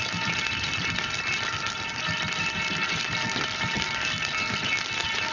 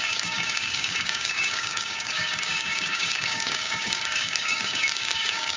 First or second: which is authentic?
first